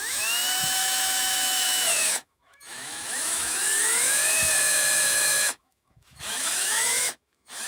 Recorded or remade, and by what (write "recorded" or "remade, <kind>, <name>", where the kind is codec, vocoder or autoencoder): remade, autoencoder, DAC-VAE